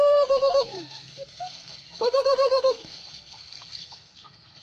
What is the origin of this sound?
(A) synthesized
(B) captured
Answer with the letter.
A